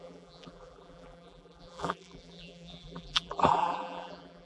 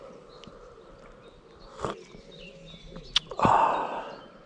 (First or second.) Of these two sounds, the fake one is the first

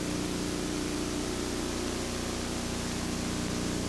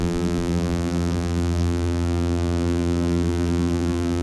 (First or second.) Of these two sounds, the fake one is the second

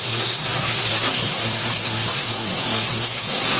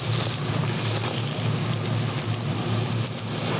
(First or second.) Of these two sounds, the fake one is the first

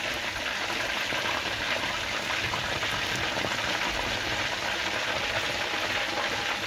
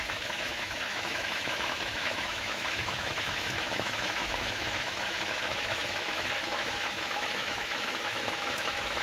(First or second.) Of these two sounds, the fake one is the second